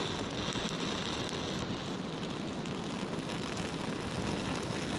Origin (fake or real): real